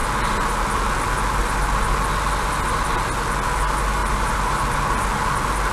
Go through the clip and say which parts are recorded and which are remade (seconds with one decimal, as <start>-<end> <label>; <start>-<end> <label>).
0.0-4.0 recorded; 4.0-4.7 remade; 4.7-5.7 recorded